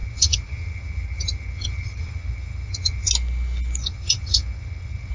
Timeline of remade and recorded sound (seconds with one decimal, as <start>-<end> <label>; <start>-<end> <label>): 0.0-3.1 remade; 3.1-3.8 recorded; 3.8-5.1 remade